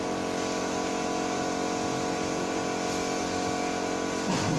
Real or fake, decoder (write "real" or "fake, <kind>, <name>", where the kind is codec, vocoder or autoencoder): real